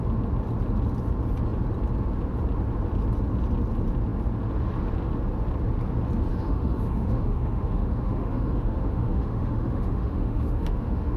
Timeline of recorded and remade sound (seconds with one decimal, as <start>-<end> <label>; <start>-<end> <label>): 0.0-6.3 recorded; 6.3-11.2 remade